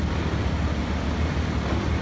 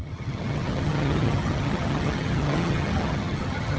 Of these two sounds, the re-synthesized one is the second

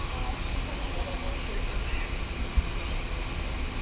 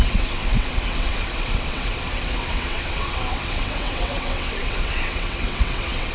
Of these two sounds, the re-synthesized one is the second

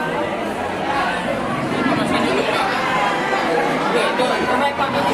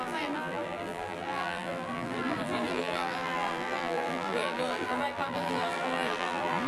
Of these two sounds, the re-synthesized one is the second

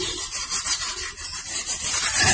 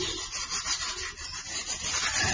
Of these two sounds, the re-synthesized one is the first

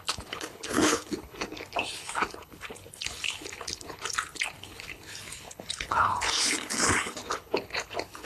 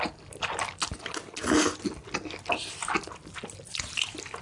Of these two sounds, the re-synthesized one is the first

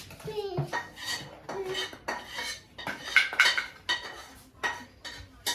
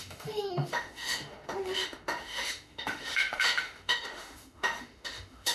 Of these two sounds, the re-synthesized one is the second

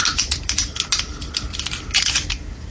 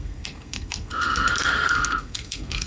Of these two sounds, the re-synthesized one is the second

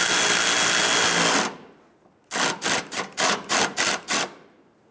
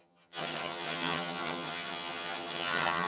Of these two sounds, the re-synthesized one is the second